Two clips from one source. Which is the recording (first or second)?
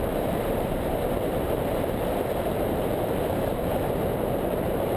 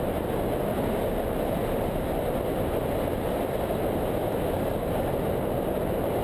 second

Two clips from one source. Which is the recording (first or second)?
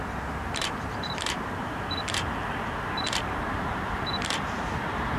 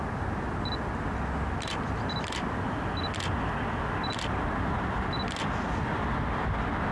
second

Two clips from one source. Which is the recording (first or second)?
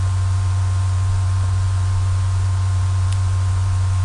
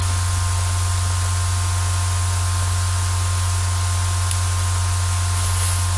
second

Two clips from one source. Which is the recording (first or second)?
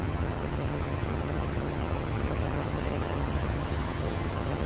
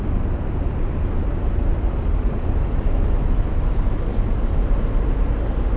second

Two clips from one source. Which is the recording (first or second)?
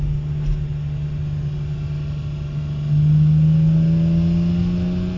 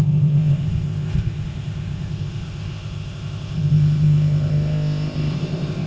first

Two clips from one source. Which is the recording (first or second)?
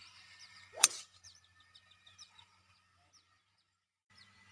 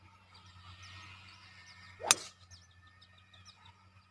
second